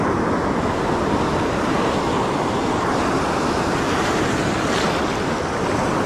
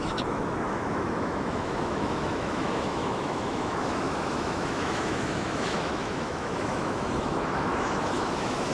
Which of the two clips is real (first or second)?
first